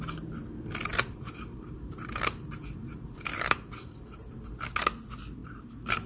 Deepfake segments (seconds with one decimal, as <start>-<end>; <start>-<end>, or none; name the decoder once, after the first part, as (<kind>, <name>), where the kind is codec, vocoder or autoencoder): 0.9-4.4 (vocoder, BigVGAN v2); 5.4-6.1